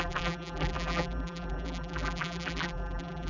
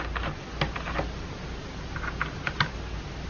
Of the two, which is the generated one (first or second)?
first